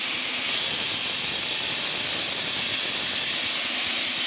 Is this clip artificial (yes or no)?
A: no